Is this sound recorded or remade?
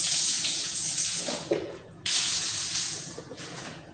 remade